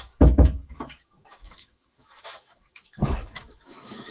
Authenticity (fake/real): fake